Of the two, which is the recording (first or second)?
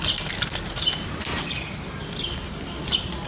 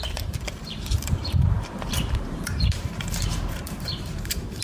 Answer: first